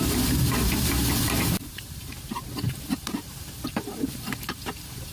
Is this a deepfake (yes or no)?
yes